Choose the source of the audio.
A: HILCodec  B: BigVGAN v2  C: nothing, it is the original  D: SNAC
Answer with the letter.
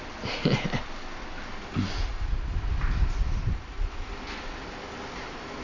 C